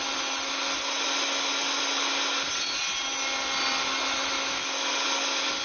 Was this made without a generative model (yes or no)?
yes